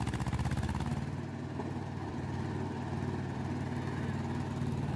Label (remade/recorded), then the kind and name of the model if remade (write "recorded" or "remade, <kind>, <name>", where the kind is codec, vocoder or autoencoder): recorded